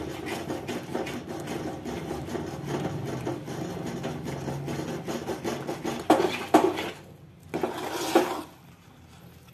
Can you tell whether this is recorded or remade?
recorded